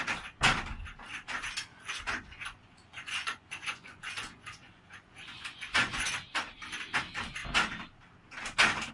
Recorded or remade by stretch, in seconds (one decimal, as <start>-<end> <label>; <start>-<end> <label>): 0.0-1.7 recorded; 1.7-6.1 remade; 6.1-8.9 recorded